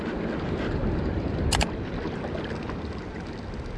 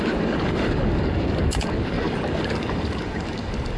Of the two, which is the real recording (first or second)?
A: first